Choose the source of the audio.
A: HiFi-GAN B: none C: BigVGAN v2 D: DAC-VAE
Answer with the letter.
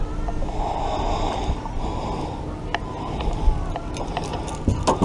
B